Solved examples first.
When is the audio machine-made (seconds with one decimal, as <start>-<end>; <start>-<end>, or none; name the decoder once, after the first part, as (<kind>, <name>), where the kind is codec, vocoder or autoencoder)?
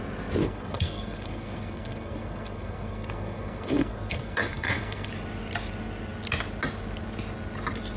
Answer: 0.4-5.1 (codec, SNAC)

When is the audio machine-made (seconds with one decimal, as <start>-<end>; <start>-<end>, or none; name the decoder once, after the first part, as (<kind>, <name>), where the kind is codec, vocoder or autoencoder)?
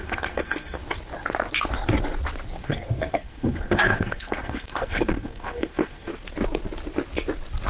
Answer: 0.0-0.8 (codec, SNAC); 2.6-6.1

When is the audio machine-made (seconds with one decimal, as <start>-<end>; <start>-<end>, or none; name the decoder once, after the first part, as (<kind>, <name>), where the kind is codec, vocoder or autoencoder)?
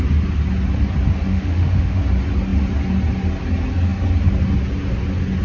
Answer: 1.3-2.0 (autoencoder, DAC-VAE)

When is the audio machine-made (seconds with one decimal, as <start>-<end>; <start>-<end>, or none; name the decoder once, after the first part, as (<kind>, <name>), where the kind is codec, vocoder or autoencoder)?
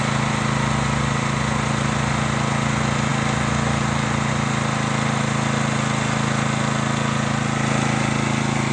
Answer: none